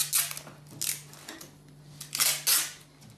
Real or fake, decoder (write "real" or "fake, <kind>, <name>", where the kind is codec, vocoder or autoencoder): real